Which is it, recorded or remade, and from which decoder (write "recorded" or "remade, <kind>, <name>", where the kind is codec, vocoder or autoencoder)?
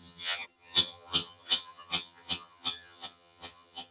remade, vocoder, HiFi-GAN